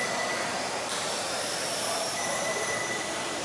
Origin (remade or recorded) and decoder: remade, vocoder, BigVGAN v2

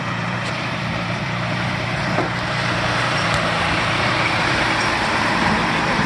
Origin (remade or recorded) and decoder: remade, vocoder, BigVGAN v2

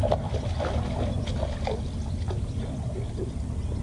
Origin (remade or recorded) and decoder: recorded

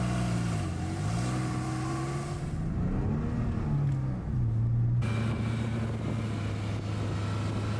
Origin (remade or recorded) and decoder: recorded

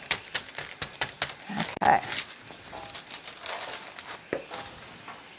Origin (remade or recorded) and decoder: recorded